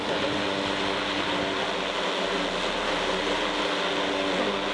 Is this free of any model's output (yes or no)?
yes